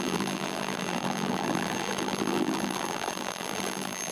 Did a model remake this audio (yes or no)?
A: yes